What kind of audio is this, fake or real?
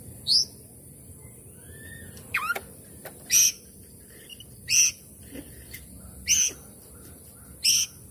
real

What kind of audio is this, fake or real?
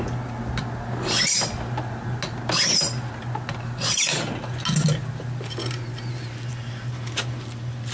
real